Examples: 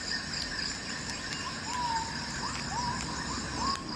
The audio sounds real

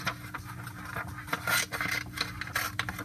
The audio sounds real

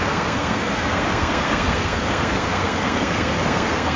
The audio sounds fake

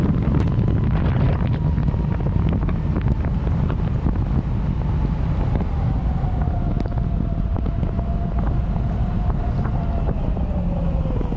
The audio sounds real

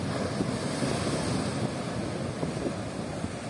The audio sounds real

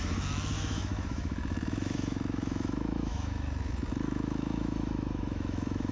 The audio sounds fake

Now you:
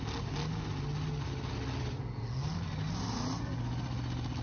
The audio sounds real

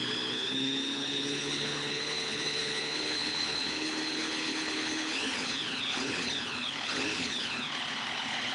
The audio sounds fake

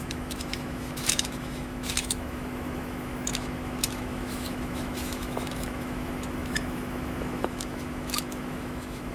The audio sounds fake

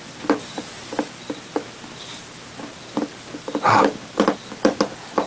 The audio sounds real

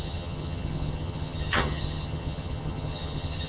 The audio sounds fake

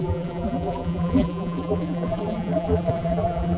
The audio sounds fake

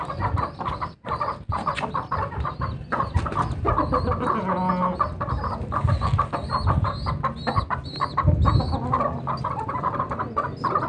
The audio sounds real